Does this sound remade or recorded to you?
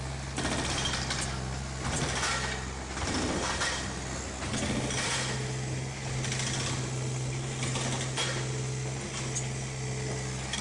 recorded